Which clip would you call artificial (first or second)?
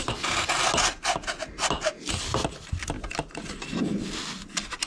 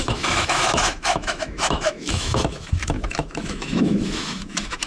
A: second